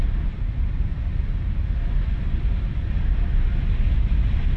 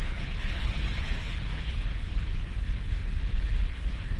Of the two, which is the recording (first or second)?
first